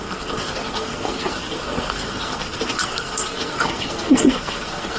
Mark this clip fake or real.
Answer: fake